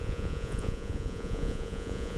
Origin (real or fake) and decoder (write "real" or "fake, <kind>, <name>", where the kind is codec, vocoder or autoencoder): fake, vocoder, Vocos